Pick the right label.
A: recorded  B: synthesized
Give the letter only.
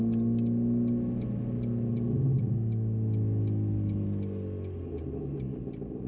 A